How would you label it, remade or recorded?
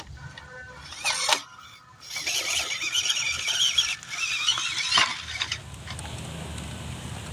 recorded